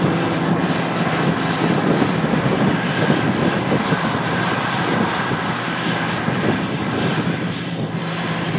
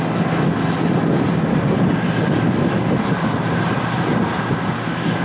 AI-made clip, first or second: first